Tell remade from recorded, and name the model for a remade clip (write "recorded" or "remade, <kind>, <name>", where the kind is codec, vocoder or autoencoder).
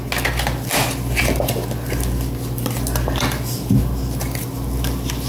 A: recorded